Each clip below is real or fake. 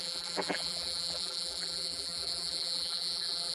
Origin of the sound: fake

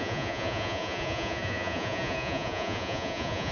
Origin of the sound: fake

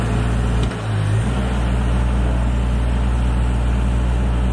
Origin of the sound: real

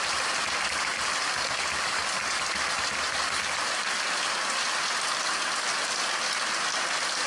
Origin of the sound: fake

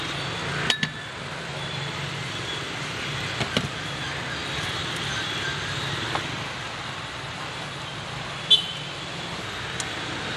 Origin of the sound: real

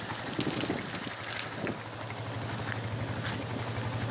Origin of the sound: real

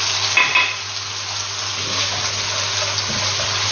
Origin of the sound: real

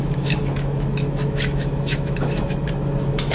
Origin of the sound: fake